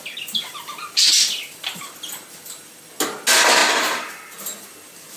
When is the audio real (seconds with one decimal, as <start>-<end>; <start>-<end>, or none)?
0.0-5.2